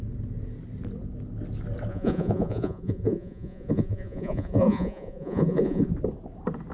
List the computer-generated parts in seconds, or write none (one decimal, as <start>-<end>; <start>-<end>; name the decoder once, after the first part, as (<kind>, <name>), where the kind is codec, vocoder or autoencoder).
1.9-5.9 (vocoder, Vocos)